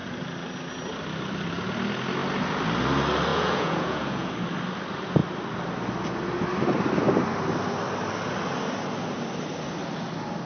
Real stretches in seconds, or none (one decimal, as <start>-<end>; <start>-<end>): 0.0-3.3; 4.3-10.5